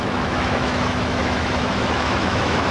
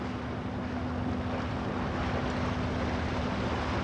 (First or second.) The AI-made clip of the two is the first